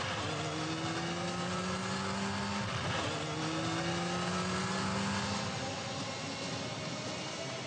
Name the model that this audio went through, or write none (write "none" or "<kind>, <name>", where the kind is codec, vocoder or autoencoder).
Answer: none